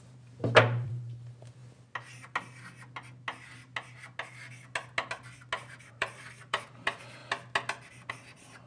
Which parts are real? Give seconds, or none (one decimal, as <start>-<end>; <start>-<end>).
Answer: 1.6-5.9; 7.2-8.1